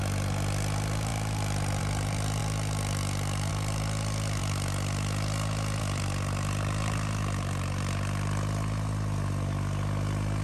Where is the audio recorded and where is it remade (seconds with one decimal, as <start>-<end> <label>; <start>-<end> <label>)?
0.0-10.4 recorded